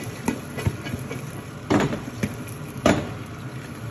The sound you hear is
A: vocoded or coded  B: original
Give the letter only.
A